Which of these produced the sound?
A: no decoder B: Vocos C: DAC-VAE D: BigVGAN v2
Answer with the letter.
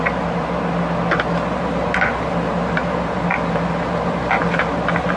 A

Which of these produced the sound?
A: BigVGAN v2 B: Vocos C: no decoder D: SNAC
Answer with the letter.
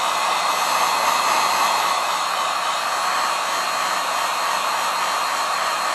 C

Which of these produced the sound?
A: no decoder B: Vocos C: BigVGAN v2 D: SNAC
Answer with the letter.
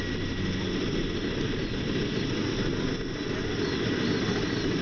A